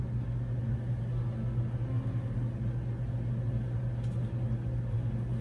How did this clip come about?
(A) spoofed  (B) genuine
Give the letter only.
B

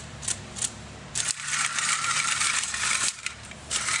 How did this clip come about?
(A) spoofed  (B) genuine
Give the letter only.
A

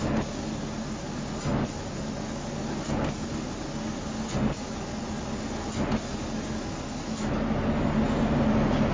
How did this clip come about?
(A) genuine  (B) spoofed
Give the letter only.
A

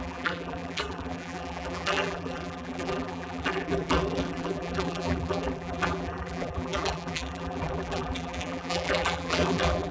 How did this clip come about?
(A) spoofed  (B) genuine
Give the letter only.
A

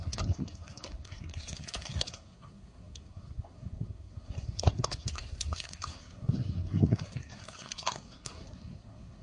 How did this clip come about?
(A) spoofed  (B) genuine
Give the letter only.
A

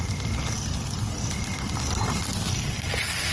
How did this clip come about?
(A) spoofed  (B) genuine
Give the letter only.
B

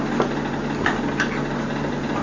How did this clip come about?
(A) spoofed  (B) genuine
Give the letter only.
B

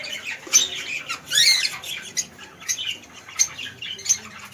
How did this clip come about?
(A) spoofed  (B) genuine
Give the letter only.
B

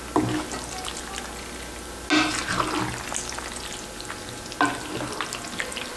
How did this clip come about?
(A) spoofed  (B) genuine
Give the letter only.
B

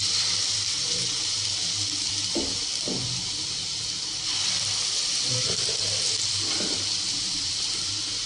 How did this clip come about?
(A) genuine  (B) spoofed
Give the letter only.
B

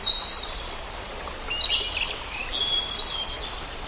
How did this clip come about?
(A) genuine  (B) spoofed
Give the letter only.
A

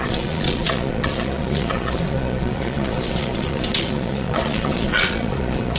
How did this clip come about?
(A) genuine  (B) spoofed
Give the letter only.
B